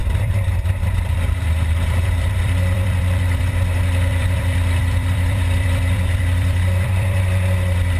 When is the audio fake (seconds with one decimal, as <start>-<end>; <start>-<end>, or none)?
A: 0.0-8.0